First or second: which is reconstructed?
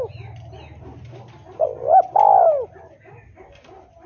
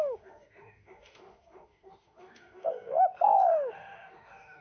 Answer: second